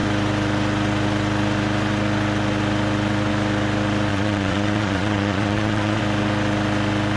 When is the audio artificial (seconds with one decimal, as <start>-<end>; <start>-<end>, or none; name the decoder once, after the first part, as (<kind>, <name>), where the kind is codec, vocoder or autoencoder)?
4.1-6.0 (vocoder, Vocos)